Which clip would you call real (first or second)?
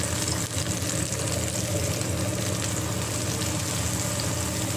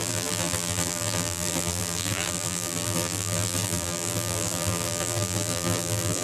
first